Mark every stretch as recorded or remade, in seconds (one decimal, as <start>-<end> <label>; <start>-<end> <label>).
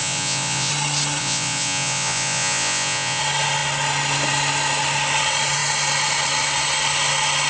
0.0-0.7 remade; 0.7-1.2 recorded; 1.2-3.2 remade; 3.2-7.5 recorded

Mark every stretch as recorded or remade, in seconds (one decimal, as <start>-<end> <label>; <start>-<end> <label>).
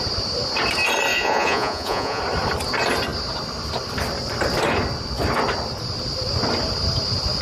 0.0-1.1 recorded; 1.1-2.2 remade; 2.2-7.4 recorded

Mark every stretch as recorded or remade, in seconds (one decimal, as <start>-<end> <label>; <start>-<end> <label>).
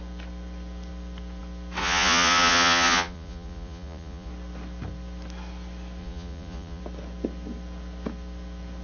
0.0-1.8 recorded; 1.8-4.3 remade; 4.3-6.0 recorded; 6.0-6.8 remade; 6.8-8.8 recorded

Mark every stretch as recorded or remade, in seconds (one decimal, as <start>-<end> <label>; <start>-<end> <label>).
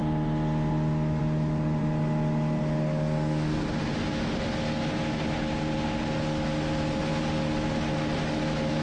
0.0-8.8 recorded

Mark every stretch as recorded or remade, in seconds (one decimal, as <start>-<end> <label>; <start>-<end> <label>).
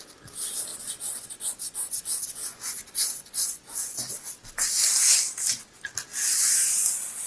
0.0-0.7 recorded; 0.7-4.1 remade; 4.1-6.1 recorded; 6.1-6.7 remade; 6.7-7.3 recorded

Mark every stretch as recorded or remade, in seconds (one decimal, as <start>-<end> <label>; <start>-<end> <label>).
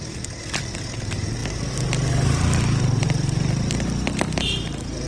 0.0-5.1 recorded